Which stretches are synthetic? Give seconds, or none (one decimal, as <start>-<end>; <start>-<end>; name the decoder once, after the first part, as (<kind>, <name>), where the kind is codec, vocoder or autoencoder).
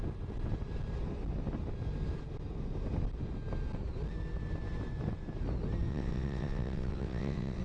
5.9-7.6 (vocoder, WaveNeXt)